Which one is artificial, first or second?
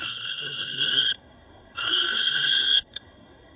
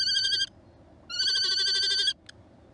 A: first